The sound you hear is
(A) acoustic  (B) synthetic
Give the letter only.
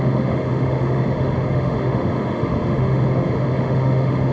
B